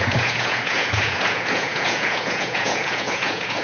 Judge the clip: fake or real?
fake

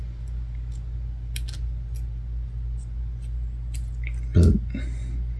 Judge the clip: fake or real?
real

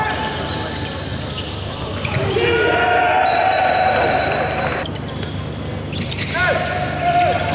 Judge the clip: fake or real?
real